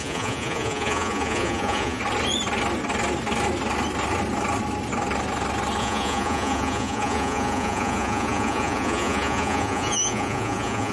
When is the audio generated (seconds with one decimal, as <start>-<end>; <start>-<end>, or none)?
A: 0.0-2.0; 5.8-10.9